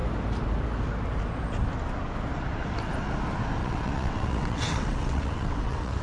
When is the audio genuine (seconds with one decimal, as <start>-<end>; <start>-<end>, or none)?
0.0-3.6